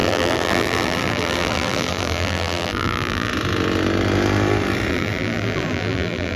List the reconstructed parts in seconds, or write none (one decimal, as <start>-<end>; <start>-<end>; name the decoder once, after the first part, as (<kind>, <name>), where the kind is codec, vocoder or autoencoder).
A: 0.0-3.3 (vocoder, BigVGAN v2); 4.9-6.4